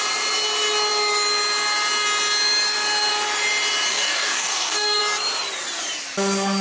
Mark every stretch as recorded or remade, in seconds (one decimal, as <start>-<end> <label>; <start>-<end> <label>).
0.0-3.9 recorded; 3.9-5.0 remade; 5.0-6.6 recorded